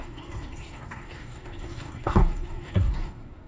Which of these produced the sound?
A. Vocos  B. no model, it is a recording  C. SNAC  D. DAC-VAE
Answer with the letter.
C